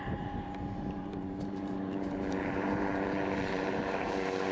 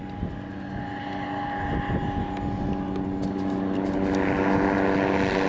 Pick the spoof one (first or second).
first